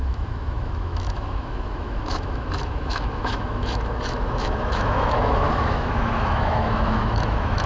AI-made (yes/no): yes